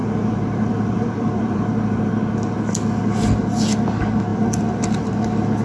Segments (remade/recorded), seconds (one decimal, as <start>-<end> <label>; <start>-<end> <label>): 0.0-2.1 remade; 2.1-4.3 recorded; 4.3-5.1 remade; 5.1-5.6 recorded